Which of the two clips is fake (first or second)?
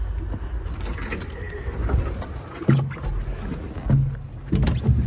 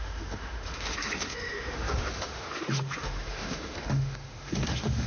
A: second